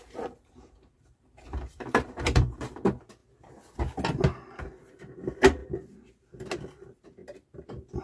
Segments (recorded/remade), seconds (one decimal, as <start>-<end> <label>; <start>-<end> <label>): 0.0-2.8 remade; 2.8-8.0 recorded